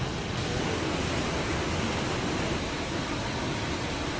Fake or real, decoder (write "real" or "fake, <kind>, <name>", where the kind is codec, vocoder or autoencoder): real